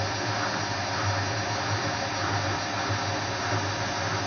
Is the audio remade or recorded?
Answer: recorded